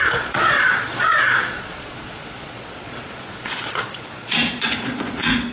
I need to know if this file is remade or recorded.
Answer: remade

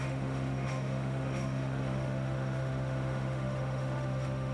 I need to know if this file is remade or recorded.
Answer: remade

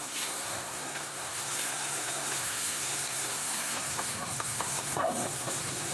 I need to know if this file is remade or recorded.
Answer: remade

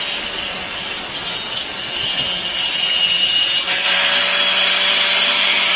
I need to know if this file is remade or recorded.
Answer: recorded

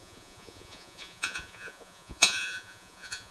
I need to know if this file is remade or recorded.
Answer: remade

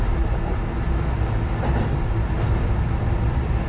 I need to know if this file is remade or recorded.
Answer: recorded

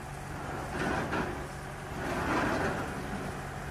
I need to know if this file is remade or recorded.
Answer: recorded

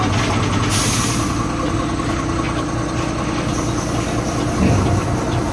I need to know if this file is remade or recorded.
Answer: recorded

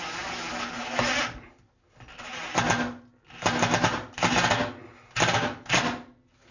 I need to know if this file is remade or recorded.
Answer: recorded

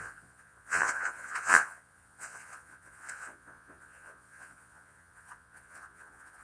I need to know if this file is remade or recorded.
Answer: remade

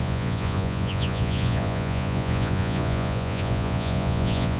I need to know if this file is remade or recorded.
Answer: remade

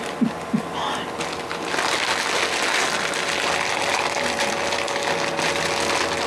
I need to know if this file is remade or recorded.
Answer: recorded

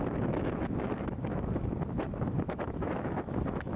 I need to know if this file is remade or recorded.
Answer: remade